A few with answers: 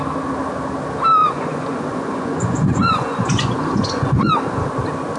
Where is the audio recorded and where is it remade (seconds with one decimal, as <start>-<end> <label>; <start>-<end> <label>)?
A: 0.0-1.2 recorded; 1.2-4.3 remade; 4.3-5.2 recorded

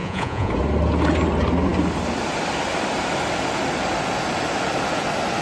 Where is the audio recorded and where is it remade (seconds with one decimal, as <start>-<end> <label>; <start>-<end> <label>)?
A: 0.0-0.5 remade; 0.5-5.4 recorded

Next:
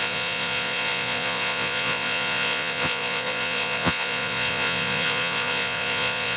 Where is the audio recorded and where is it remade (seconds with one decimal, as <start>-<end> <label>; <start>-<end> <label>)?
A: 0.0-6.4 remade